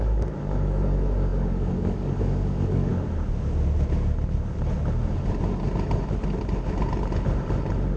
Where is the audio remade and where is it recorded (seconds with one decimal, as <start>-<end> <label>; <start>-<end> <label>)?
0.0-2.9 remade; 2.9-8.0 recorded